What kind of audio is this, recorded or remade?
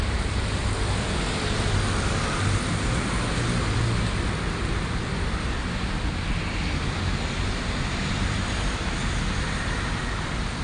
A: recorded